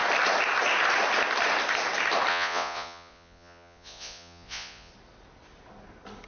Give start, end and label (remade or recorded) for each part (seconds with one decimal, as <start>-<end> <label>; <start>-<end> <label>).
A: 0.0-2.3 recorded; 2.3-4.9 remade; 4.9-6.3 recorded